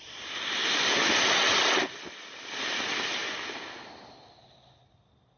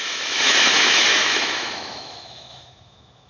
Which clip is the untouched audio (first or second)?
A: first